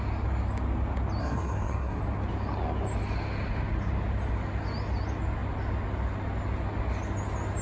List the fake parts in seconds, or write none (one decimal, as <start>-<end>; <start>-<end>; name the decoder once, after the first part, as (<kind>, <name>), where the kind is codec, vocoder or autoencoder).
1.2-2.0 (codec, SNAC)